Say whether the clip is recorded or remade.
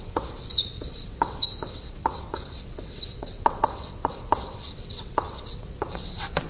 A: remade